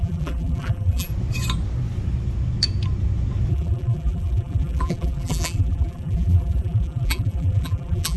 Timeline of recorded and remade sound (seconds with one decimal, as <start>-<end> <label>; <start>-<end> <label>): 0.0-1.1 remade; 1.1-3.5 recorded; 3.5-8.2 remade